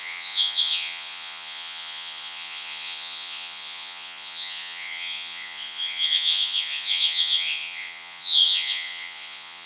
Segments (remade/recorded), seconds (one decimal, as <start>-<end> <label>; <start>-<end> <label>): 0.0-9.7 remade